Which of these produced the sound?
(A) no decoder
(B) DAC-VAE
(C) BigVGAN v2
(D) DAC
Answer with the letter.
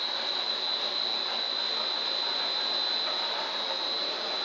A